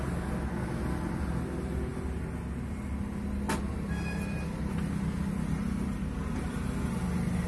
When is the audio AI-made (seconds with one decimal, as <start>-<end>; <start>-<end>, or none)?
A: none